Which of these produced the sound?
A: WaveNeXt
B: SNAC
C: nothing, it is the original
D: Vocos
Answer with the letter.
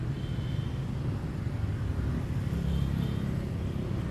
C